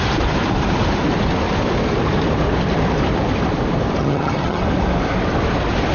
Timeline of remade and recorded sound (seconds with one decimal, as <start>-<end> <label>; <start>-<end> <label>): 0.0-4.0 recorded; 4.0-4.6 remade; 4.6-5.9 recorded